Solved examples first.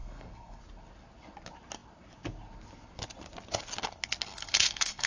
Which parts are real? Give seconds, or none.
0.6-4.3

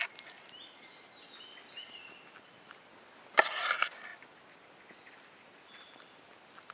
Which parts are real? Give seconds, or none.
0.0-6.7

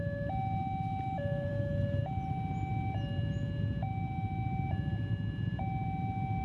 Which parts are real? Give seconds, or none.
0.0-1.5; 2.0-6.4

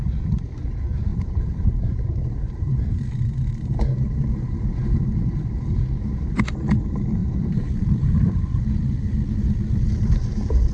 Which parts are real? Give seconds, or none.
0.0-1.1; 6.4-7.2

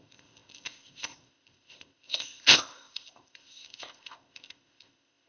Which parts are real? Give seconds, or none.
none

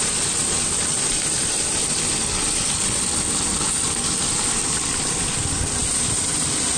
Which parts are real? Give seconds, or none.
0.0-6.8

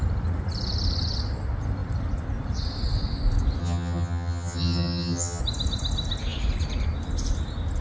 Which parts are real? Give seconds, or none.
0.0-3.6; 5.4-7.8

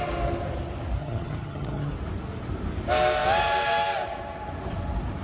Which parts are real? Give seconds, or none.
0.0-1.0; 1.9-5.2